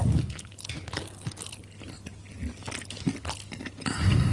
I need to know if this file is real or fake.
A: real